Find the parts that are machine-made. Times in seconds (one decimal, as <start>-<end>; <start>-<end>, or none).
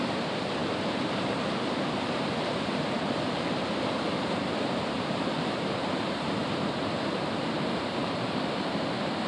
0.0-9.3